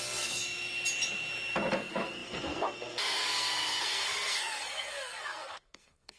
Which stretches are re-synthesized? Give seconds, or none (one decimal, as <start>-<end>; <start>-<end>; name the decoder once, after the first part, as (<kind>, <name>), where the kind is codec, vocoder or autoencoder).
0.0-0.4 (codec, SNAC); 1.7-6.2